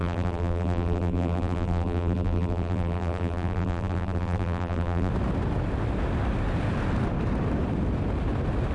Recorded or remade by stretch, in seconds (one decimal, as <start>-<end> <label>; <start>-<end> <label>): 0.0-5.1 remade; 5.1-8.7 recorded